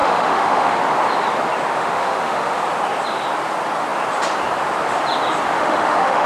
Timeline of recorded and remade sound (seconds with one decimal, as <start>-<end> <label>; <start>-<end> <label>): 0.0-0.8 remade; 0.8-1.8 recorded; 1.8-2.6 remade; 2.6-5.5 recorded; 5.5-6.3 remade